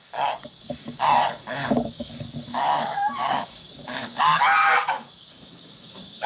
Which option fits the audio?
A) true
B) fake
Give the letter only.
B